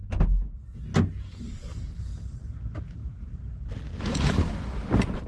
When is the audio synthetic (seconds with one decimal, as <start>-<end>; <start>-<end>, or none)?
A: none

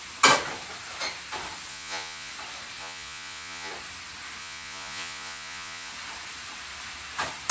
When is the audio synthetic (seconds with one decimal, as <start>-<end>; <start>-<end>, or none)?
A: 1.7-2.3; 2.8-3.7; 4.4-5.9

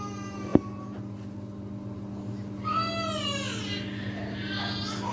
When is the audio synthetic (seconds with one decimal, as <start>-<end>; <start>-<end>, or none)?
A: none

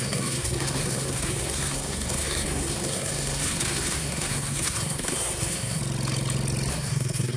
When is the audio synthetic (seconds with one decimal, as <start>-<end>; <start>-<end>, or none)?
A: 0.0-5.8; 6.7-7.4

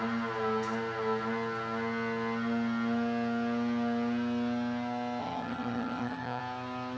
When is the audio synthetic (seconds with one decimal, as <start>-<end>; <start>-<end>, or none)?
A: 5.2-6.4

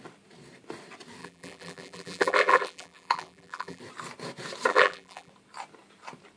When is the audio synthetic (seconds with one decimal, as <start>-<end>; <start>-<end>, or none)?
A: 1.2-3.8; 4.7-5.3

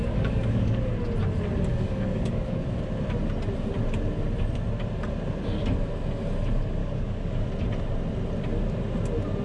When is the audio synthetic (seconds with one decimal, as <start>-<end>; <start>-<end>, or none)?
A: 0.0-0.9; 1.7-2.8; 6.8-7.5

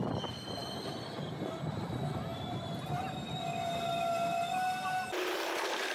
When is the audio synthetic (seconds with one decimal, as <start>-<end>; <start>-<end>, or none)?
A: none